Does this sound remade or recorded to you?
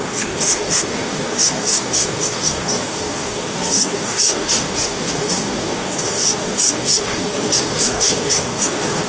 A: remade